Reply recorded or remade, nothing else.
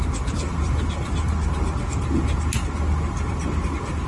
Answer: recorded